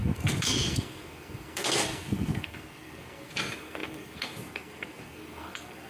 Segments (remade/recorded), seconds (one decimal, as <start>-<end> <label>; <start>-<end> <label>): 0.0-5.9 remade